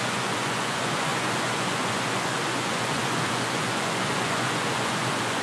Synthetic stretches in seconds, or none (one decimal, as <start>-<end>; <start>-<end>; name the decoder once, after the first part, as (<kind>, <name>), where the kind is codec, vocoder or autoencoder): 0.0-5.4 (vocoder, Vocos)